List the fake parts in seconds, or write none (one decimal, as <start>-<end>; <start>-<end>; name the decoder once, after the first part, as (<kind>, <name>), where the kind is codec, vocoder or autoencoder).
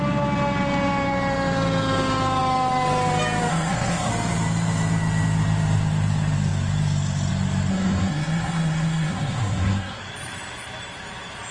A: 3.5-4.1 (codec, SNAC); 7.7-10.0